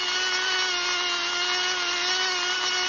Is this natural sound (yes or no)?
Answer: yes